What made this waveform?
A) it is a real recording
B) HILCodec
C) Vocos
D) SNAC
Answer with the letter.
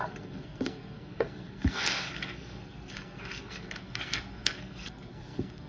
D